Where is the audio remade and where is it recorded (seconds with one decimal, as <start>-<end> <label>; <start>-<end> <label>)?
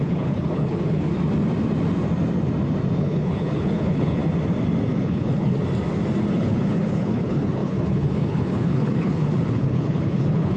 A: 0.0-1.1 remade; 1.1-3.0 recorded; 3.0-4.2 remade; 4.2-5.0 recorded; 5.0-5.6 remade; 5.6-6.3 recorded; 6.3-10.6 remade